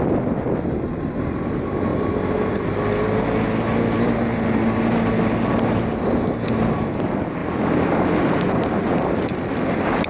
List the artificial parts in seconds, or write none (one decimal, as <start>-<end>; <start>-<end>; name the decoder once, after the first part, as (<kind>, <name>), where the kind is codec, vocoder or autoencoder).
none